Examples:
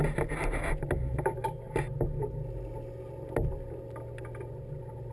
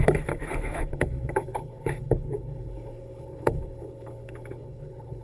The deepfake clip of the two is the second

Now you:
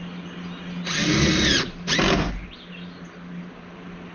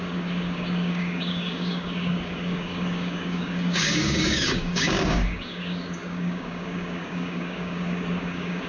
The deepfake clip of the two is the second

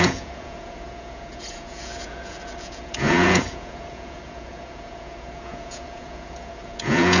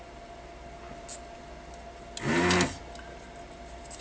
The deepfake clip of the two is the first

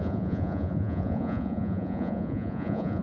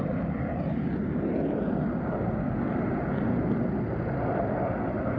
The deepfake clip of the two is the first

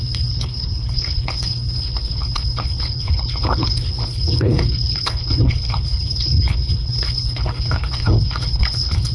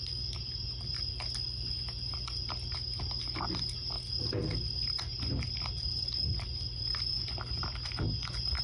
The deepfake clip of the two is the first